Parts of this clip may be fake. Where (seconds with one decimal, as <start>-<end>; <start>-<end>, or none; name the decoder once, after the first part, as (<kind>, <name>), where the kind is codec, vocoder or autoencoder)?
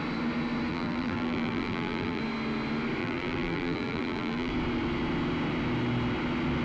0.7-2.2 (vocoder, BigVGAN v2); 3.0-4.5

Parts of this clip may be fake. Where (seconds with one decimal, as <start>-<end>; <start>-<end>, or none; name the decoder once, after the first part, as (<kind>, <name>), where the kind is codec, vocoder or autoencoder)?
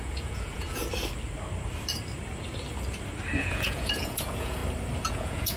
0.0-0.8 (vocoder, Vocos); 3.4-4.6; 5.1-5.6